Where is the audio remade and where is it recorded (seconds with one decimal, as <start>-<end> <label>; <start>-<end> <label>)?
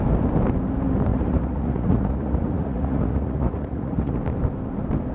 0.0-1.1 recorded; 1.1-4.2 remade; 4.2-5.1 recorded